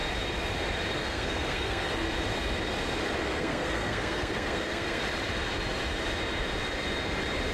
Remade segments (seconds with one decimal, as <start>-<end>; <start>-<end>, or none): 1.0-1.9; 3.2-5.0